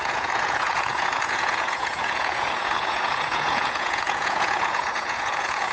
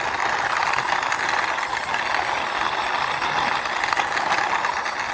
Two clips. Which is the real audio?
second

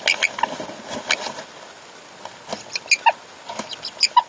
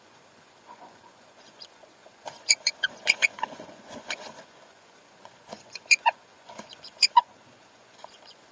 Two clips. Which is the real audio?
first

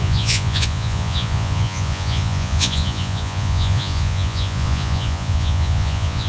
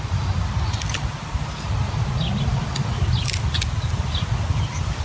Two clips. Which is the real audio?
second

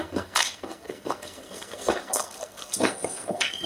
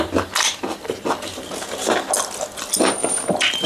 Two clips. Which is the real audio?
second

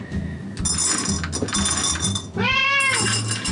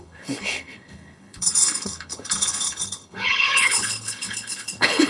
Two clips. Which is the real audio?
first